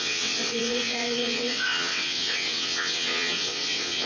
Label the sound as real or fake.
fake